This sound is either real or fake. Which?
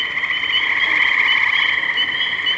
real